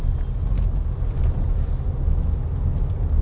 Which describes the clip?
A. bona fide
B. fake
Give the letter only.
A